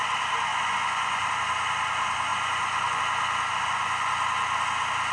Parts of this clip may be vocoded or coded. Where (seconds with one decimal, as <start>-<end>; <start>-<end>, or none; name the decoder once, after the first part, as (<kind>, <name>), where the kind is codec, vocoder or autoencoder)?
0.5-1.3 (vocoder, Vocos); 2.3-3.0; 3.5-4.1

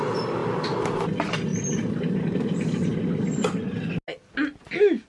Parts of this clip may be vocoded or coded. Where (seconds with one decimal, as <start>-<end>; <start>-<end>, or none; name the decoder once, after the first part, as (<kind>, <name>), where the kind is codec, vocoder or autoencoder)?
none

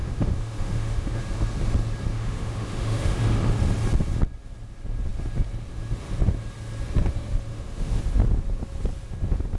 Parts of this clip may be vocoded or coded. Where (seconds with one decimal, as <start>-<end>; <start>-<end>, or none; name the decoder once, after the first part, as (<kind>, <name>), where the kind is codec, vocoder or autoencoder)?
0.0-1.2 (autoencoder, DAC-VAE); 2.1-3.2; 7.5-8.0

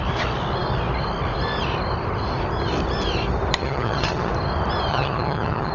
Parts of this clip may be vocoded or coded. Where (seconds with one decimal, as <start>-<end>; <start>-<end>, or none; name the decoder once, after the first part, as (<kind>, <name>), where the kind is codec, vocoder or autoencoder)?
3.6-4.3 (vocoder, HiFi-GAN); 4.9-5.7